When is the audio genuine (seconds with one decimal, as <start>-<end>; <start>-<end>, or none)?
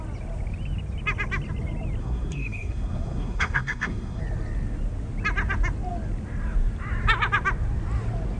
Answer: 0.0-2.0; 4.2-8.4